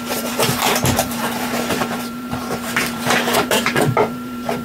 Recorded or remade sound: remade